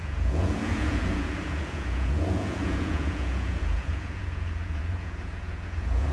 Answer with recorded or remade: remade